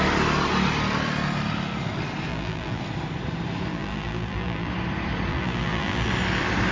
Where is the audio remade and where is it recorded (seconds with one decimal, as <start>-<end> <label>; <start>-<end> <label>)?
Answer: 0.0-2.3 recorded; 2.3-2.8 remade; 2.8-3.7 recorded; 3.7-4.7 remade; 4.7-5.3 recorded; 5.3-6.1 remade; 6.1-6.7 recorded

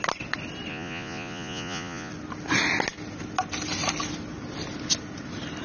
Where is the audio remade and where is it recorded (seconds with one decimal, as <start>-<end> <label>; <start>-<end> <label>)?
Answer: 0.0-0.7 recorded; 0.7-2.1 remade; 2.1-5.6 recorded

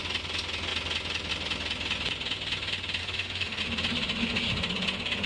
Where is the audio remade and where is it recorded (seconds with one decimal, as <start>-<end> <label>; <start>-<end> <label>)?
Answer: 0.0-3.0 recorded; 3.0-3.6 remade; 3.6-5.3 recorded

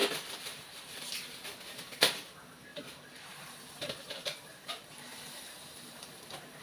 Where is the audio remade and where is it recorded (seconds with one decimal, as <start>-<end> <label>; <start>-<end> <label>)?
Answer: 0.0-1.1 remade; 1.1-2.7 recorded; 2.7-6.6 remade

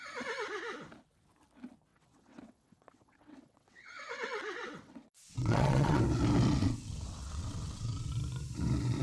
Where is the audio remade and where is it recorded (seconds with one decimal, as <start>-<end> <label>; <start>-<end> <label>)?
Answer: 0.0-1.9 recorded; 1.9-6.0 remade; 6.0-6.6 recorded; 6.6-8.1 remade; 8.1-9.0 recorded

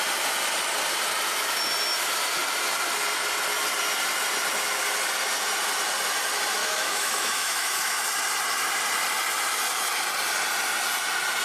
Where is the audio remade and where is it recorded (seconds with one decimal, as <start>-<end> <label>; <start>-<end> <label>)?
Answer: 0.0-6.6 recorded; 6.6-8.0 remade; 8.0-11.4 recorded

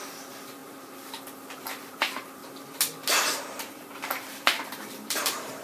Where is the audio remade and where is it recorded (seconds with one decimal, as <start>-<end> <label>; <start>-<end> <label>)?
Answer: 0.0-2.4 remade; 2.4-3.2 recorded; 3.2-5.6 remade